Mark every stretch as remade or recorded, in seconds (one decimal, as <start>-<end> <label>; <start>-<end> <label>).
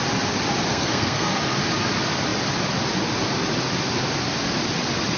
0.0-0.7 recorded; 0.7-1.4 remade; 1.4-5.2 recorded